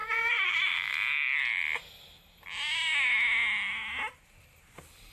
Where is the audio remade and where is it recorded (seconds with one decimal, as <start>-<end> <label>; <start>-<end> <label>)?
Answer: 0.0-0.9 remade; 0.9-5.1 recorded